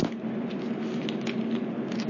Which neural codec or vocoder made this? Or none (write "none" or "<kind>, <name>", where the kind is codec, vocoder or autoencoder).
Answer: none